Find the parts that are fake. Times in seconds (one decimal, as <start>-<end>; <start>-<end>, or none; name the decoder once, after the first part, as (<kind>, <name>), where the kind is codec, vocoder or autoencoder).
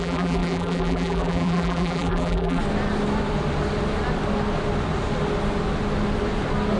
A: 0.0-2.6 (vocoder, BigVGAN v2)